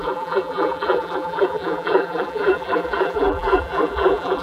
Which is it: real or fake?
fake